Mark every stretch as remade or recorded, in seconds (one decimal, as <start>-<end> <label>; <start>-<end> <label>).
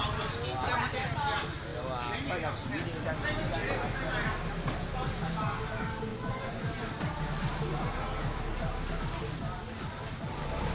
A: 0.0-6.1 recorded; 6.1-6.6 remade; 6.6-10.7 recorded